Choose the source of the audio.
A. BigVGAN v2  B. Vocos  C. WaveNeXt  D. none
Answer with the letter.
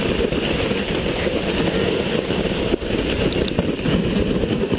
D